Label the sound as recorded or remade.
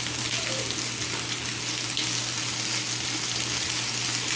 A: recorded